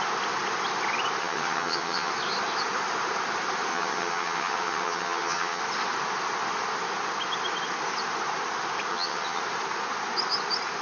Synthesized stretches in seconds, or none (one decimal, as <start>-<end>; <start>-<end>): 1.2-2.1; 3.7-5.6; 8.9-9.4